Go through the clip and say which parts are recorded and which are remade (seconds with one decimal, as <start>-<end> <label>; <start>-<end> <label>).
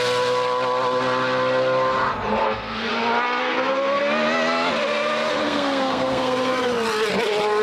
0.0-2.4 recorded; 2.4-2.9 remade; 2.9-3.4 recorded; 3.4-4.0 remade; 4.0-5.4 recorded; 5.4-6.6 remade; 6.6-7.6 recorded